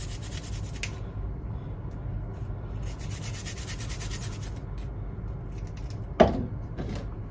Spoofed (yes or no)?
no